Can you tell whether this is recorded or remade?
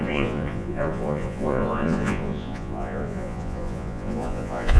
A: remade